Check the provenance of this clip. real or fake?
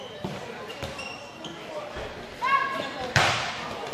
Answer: real